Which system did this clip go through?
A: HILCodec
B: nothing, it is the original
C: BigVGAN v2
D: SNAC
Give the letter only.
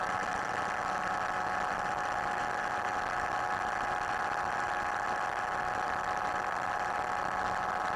B